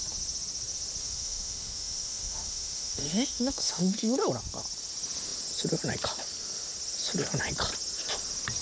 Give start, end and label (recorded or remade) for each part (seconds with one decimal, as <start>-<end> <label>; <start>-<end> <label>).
0.0-1.0 recorded; 1.0-4.3 remade; 4.3-8.6 recorded